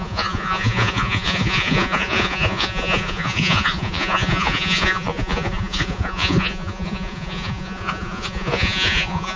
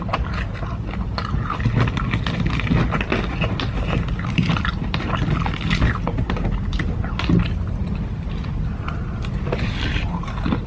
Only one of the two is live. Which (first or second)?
second